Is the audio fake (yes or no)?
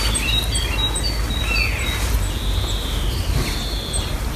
no